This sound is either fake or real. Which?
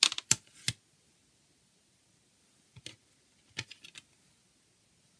real